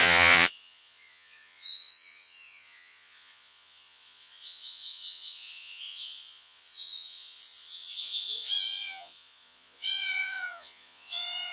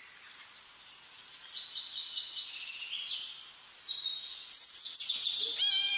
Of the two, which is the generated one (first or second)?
first